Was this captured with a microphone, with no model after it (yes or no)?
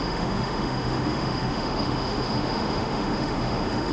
no